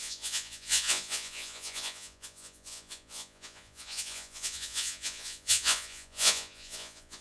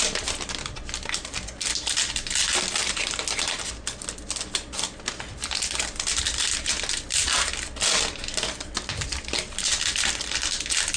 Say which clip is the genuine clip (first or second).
second